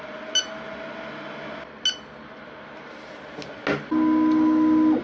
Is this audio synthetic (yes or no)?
no